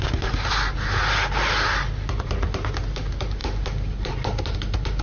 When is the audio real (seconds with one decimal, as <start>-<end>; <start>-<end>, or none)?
0.0-5.0